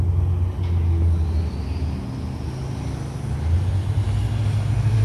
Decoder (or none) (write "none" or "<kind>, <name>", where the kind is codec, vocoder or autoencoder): none